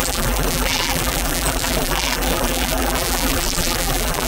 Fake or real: fake